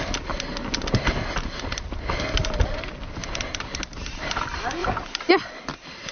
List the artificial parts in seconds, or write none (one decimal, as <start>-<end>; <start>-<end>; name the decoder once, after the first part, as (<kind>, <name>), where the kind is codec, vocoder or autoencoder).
3.2-3.8 (vocoder, BigVGAN v2); 4.8-5.3